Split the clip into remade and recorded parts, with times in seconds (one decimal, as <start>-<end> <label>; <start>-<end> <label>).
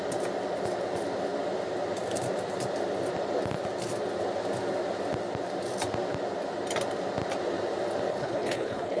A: 0.0-8.1 recorded; 8.1-9.0 remade